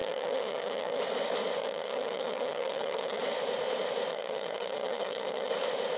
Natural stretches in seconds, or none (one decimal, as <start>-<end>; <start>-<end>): 1.0-1.6; 3.2-4.1; 5.5-6.0

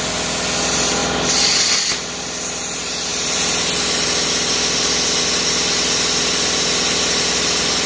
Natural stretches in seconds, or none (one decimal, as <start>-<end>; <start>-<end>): 0.0-7.9

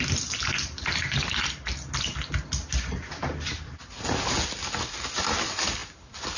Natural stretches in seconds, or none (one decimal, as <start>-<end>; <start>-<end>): 0.0-6.4

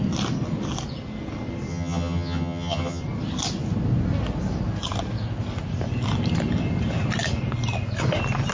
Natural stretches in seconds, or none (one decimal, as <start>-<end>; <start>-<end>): 0.0-1.7; 3.0-8.5

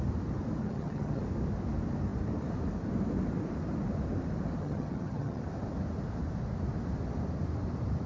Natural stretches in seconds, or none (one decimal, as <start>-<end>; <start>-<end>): 0.0-0.6; 1.2-4.6; 5.4-8.1

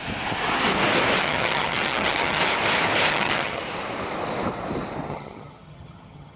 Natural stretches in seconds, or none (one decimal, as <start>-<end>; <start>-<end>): 0.0-1.2; 2.4-3.1; 3.6-5.1

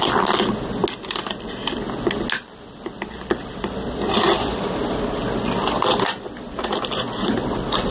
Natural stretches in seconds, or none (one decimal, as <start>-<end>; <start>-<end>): 0.0-7.9